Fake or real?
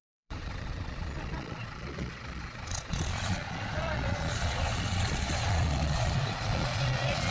fake